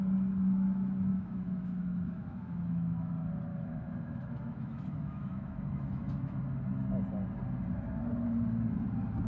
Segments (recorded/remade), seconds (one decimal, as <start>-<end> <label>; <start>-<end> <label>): 0.0-1.1 recorded; 1.1-3.1 remade; 3.1-3.5 recorded; 3.5-6.4 remade; 6.4-9.3 recorded